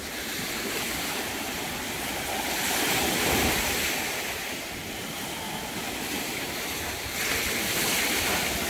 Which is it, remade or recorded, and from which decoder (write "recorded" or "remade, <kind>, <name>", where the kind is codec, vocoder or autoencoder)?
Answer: recorded